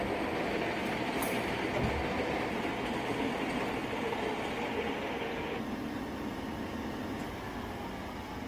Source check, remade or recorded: recorded